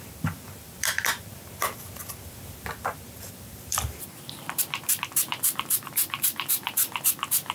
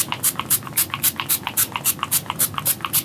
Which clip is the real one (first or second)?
second